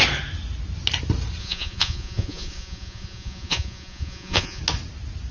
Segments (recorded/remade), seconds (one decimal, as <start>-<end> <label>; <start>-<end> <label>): 0.0-1.4 recorded; 1.4-4.6 remade; 4.6-5.3 recorded